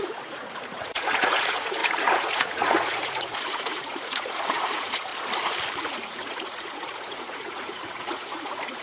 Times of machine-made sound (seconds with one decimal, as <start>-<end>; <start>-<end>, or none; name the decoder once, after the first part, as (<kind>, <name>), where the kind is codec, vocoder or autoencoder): 0.0-5.1 (vocoder, Vocos); 5.8-8.8